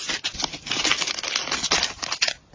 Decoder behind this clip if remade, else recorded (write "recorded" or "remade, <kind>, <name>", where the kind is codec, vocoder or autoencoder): recorded